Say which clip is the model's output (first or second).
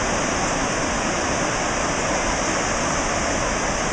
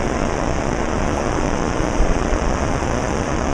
second